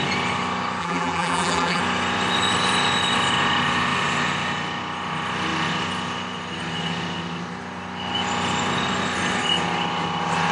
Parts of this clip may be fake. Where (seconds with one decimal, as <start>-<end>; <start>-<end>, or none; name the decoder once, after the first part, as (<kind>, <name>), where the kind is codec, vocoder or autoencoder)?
0.8-1.8 (vocoder, BigVGAN v2)